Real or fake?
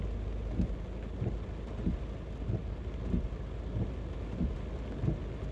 real